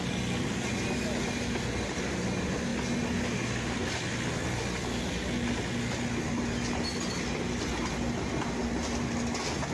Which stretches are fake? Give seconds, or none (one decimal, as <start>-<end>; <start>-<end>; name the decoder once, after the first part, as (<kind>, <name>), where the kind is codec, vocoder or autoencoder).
none